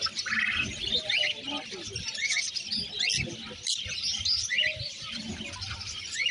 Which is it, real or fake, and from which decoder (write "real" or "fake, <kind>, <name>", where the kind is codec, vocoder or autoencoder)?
real